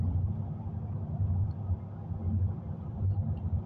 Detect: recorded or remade recorded